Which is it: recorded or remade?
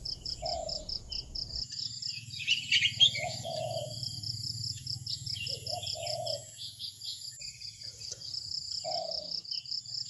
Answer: remade